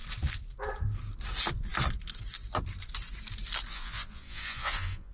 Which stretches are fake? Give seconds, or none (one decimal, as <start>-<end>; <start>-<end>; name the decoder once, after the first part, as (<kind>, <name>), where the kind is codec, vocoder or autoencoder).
3.7-5.1 (vocoder, Vocos)